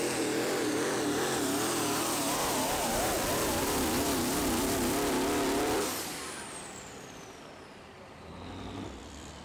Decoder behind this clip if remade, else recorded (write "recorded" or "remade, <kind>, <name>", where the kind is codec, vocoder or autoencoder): remade, vocoder, BigVGAN v2